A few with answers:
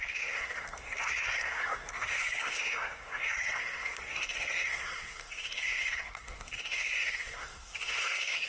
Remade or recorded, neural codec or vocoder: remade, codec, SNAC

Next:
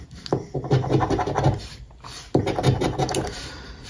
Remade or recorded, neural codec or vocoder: recorded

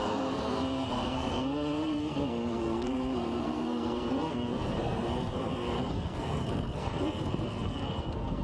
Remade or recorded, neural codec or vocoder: remade, codec, SNAC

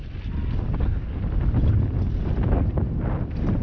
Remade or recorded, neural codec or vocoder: recorded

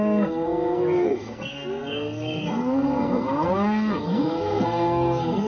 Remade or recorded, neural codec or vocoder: remade, codec, SNAC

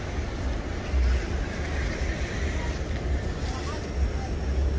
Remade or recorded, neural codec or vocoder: recorded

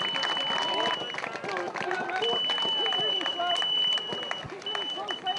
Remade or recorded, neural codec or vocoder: recorded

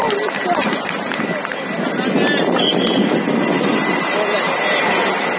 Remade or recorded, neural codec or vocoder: recorded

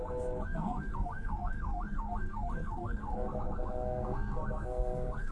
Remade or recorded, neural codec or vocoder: remade, codec, SNAC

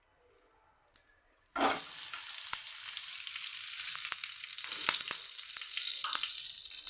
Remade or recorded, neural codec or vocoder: recorded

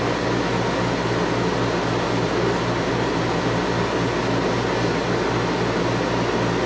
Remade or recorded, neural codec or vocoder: recorded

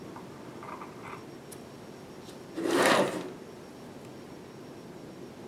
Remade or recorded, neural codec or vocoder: recorded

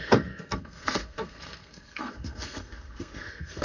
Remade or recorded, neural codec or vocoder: remade, codec, SNAC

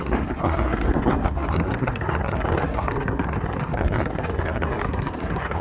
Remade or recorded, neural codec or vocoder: remade, codec, SNAC